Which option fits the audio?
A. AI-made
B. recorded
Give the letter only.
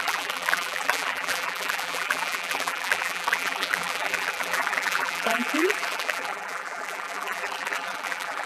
A